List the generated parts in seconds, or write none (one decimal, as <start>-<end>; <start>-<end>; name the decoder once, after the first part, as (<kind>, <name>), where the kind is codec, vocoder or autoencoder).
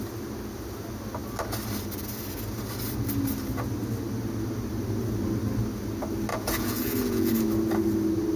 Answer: 6.3-7.3 (vocoder, Vocos)